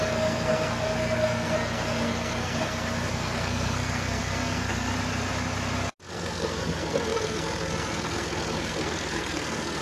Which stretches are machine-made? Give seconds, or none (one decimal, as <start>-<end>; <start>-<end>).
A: 0.0-4.9; 6.1-9.8